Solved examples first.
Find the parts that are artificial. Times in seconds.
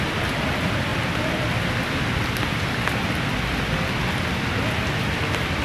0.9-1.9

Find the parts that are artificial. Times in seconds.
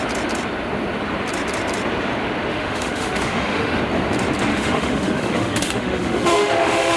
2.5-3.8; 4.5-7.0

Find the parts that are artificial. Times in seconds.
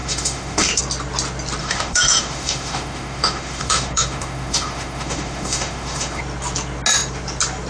0.0-0.8; 1.6-6.2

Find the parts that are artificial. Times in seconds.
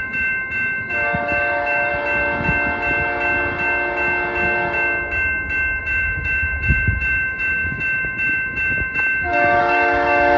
0.0-1.9; 5.8-10.4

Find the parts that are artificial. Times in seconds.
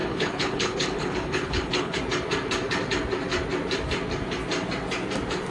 0.0-2.0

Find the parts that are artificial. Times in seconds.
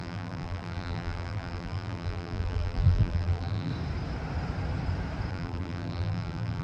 0.0-3.7; 5.3-6.6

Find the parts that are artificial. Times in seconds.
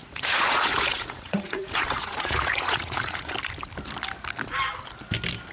0.0-3.3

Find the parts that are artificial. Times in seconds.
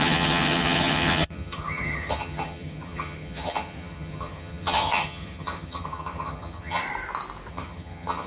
0.0-6.8; 7.5-8.3